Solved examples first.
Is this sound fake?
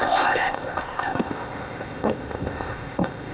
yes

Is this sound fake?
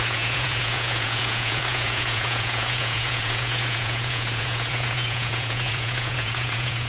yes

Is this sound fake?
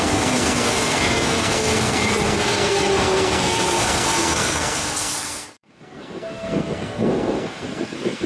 yes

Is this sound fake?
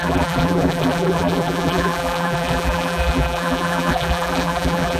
yes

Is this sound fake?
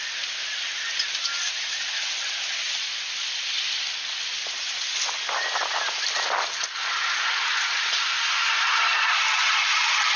no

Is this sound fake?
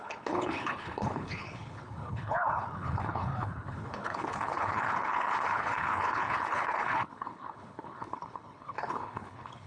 yes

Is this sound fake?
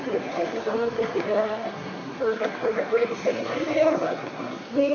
yes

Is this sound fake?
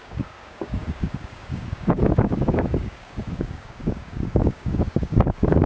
yes